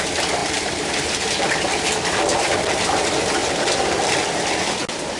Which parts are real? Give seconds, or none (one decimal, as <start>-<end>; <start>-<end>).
0.0-0.4; 3.0-3.4; 4.1-5.2